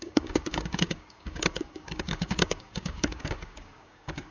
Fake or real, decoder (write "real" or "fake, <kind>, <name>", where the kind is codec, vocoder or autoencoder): fake, codec, DAC